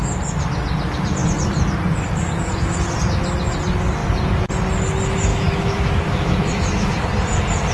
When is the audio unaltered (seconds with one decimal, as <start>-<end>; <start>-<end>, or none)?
0.0-5.3; 7.0-7.7